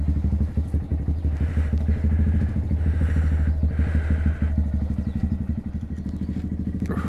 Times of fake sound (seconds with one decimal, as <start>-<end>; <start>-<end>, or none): none